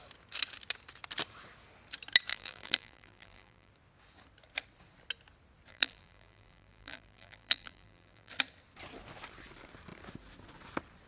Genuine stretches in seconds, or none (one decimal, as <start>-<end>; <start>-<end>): 0.0-2.3; 3.7-5.7; 8.3-11.1